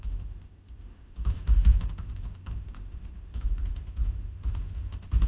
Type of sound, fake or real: fake